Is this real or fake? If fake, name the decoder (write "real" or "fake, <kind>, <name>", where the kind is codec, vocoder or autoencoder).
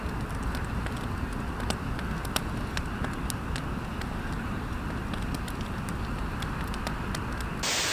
real